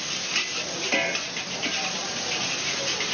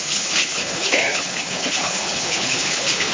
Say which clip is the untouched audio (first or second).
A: first